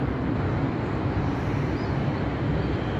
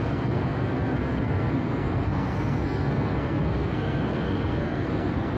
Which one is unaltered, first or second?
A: first